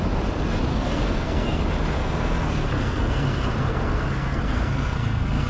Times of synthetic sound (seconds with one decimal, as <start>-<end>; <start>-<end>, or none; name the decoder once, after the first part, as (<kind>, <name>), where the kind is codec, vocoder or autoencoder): 0.7-1.6 (codec, SNAC); 2.0-5.5